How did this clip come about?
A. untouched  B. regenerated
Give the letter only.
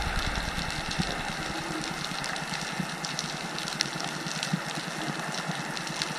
A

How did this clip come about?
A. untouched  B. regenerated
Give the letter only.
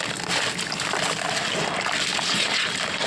A